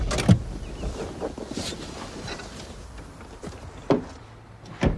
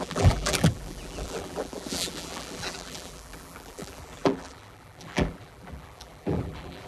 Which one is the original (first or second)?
first